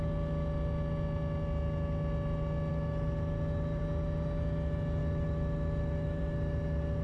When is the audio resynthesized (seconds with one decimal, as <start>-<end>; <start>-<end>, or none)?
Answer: 2.7-3.8; 5.0-6.2